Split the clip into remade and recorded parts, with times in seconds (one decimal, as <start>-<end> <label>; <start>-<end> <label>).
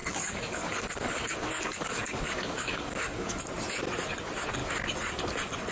0.0-3.4 remade; 3.4-5.7 recorded